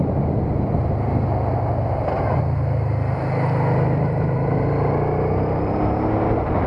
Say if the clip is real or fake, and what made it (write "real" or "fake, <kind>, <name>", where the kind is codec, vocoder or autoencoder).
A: real